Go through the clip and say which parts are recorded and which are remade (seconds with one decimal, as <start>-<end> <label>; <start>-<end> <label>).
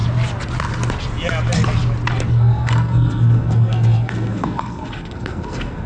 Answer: 0.0-2.3 recorded; 2.3-5.9 remade